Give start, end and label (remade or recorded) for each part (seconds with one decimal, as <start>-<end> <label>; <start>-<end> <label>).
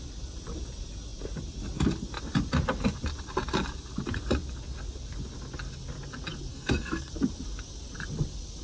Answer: 0.0-6.5 recorded; 6.5-7.1 remade; 7.1-8.6 recorded